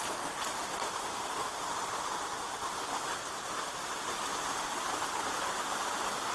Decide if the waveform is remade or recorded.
recorded